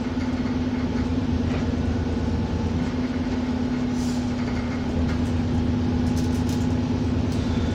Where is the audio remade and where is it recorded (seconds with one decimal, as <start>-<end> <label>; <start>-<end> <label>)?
0.0-1.1 recorded; 1.1-2.1 remade; 2.1-7.7 recorded